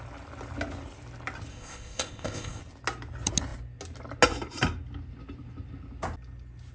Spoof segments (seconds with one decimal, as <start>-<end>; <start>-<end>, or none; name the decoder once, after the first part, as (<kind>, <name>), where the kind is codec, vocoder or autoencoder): 1.5-2.6 (codec, ZipCodec)